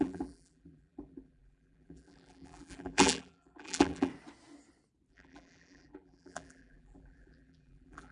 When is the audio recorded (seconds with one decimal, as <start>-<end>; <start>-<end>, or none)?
4.1-5.1